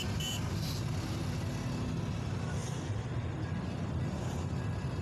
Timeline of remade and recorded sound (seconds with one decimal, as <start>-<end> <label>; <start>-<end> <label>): 0.0-2.6 recorded; 2.6-3.9 remade; 3.9-5.0 recorded